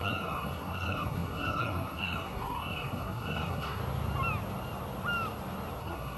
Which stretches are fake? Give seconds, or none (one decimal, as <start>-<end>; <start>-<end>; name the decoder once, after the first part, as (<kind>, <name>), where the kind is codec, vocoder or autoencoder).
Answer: 0.0-3.8 (codec, SNAC); 5.8-6.2